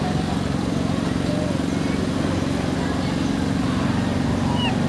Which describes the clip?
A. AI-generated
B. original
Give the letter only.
B